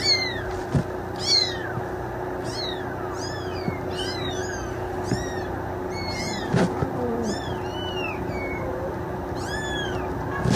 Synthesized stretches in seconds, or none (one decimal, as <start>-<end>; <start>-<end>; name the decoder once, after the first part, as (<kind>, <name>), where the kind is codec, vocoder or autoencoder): none